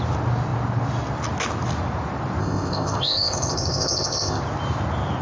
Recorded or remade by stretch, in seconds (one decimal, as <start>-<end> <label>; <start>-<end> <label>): 0.0-2.4 recorded; 2.4-4.4 remade; 4.4-5.2 recorded